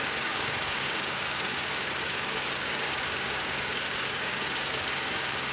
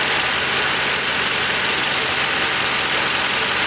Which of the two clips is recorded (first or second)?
second